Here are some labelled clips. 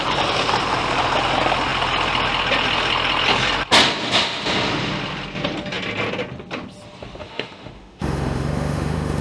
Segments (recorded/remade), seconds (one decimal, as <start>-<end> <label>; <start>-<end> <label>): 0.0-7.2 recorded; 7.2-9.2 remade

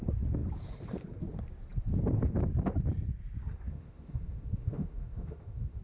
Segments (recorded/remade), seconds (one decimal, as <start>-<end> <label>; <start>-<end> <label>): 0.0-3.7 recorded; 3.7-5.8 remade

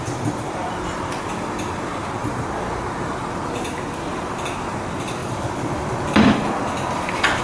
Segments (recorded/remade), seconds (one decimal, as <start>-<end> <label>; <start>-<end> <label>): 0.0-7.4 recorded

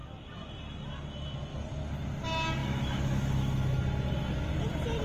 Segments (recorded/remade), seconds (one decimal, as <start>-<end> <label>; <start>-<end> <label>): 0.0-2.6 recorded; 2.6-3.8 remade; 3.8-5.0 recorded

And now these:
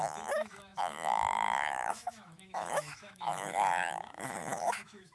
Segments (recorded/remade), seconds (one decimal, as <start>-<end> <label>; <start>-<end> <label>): 0.0-5.1 remade